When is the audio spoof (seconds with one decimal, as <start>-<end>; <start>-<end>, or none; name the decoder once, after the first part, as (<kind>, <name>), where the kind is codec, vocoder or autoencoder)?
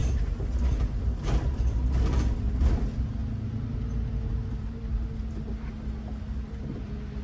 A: none